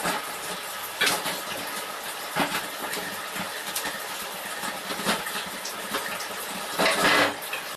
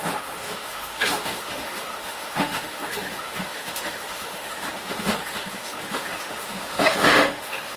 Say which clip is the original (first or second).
first